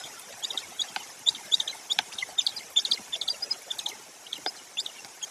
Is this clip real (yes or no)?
no